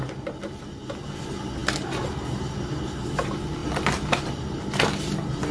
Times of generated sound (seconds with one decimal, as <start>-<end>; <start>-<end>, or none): none